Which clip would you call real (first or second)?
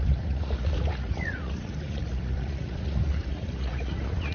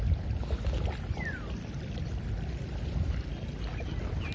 second